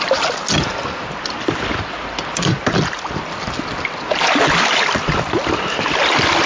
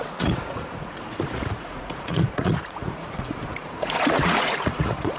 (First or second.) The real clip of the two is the first